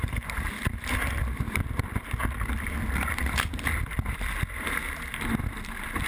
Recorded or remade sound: recorded